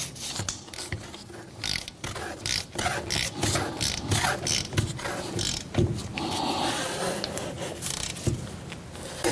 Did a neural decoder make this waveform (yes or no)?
no